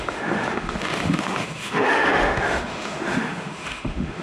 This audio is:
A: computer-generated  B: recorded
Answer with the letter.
A